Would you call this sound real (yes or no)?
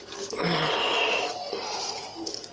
yes